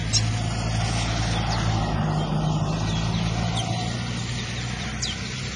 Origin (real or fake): real